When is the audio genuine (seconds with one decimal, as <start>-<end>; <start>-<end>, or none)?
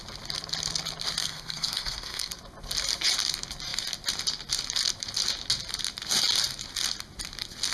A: 0.0-1.2; 2.3-7.7